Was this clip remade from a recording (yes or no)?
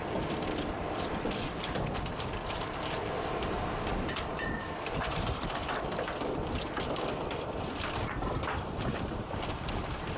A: yes